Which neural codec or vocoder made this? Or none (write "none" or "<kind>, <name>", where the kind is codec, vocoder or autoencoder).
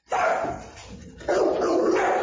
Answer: none